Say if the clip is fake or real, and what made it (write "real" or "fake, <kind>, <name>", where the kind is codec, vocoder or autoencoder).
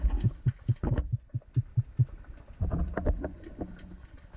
real